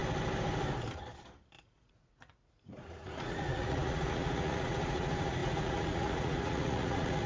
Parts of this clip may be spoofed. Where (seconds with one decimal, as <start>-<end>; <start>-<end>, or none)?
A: 1.6-7.3